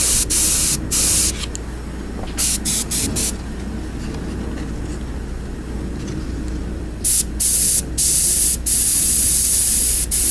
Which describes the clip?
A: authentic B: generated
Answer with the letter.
A